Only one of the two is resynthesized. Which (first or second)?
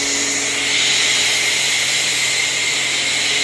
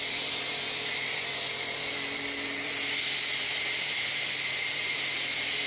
second